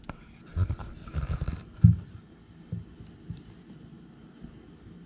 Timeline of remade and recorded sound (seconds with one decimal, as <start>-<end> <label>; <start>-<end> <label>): 0.0-5.1 recorded